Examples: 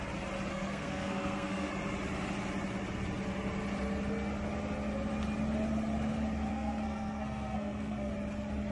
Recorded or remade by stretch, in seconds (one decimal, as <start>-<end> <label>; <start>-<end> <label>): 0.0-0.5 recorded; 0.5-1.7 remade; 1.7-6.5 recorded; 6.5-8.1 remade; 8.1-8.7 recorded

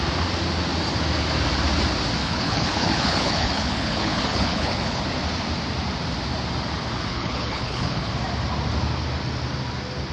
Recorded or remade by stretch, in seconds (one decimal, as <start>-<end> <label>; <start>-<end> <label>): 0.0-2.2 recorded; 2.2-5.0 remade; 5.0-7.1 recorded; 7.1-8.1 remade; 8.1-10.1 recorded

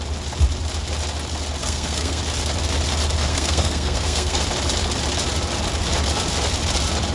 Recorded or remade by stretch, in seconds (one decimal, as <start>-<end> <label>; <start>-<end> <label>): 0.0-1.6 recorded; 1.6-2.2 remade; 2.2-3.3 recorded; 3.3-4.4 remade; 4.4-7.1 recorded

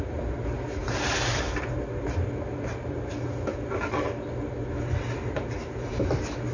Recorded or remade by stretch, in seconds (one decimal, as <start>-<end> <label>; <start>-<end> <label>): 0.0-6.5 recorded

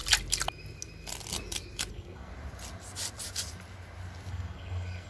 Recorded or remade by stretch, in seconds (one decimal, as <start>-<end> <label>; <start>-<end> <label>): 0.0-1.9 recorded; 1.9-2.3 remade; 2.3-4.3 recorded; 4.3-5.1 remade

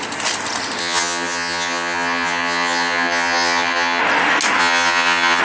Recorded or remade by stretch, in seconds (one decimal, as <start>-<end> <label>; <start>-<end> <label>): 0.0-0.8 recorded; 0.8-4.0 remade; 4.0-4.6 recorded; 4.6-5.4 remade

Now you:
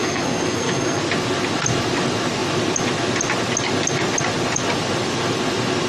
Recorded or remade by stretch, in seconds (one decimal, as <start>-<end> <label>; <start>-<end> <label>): 0.0-1.0 remade; 1.0-5.9 recorded

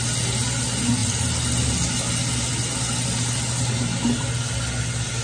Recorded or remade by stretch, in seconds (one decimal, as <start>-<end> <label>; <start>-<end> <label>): 0.0-5.2 recorded